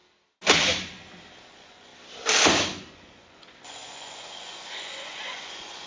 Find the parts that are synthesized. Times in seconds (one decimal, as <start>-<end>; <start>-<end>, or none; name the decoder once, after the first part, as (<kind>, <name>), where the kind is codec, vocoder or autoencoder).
1.5-1.9 (vocoder, Vocos); 2.9-5.9